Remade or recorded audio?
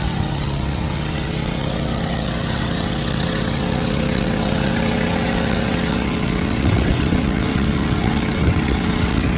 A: remade